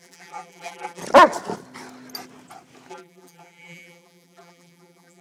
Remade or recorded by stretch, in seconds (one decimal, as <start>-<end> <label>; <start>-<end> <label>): 0.0-1.0 remade; 1.0-2.9 recorded; 2.9-5.2 remade